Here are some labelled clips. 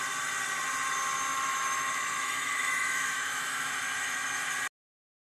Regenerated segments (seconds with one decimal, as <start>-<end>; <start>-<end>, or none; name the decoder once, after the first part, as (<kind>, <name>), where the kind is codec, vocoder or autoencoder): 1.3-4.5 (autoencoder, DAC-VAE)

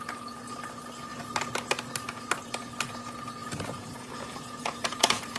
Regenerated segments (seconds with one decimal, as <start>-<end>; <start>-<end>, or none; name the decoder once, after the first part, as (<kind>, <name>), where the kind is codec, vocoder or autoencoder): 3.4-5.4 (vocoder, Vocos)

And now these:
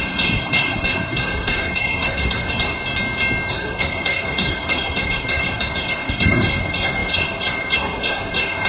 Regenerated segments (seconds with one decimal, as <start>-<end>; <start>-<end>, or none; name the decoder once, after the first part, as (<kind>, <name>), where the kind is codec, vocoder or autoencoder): 0.0-2.8 (codec, SNAC); 3.5-8.7